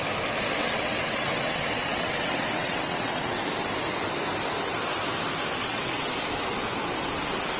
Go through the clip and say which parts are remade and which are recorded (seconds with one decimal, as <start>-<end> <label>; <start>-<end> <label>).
0.0-0.6 recorded; 0.6-3.4 remade; 3.4-5.6 recorded; 5.6-6.1 remade; 6.1-7.6 recorded